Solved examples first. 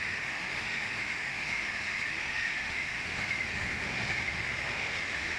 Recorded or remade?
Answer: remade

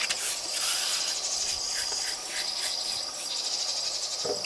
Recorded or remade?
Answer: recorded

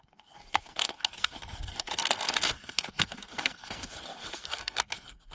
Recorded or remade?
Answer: remade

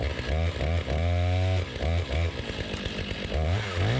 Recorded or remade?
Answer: recorded